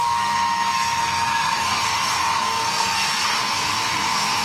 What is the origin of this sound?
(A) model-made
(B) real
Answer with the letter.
A